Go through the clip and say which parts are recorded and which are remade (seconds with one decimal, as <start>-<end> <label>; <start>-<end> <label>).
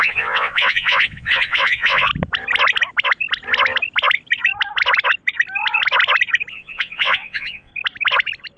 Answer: 0.0-2.1 remade; 2.1-6.5 recorded; 6.5-7.7 remade; 7.7-8.6 recorded